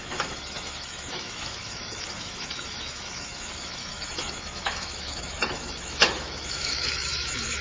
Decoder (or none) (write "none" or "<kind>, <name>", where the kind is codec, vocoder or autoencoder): autoencoder, DAC-VAE